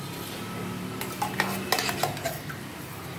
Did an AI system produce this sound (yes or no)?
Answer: no